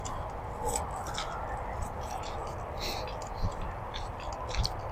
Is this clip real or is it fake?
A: real